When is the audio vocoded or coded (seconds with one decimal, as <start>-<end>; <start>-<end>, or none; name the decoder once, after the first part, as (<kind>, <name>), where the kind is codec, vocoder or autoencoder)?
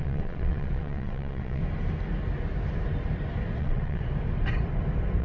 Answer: 0.0-1.6 (vocoder, WaveNeXt); 3.6-4.0